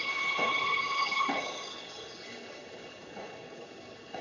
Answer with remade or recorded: remade